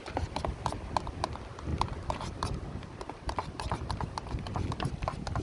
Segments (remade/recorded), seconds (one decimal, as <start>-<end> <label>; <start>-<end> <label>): 0.0-1.7 recorded; 1.7-3.9 remade; 3.9-5.4 recorded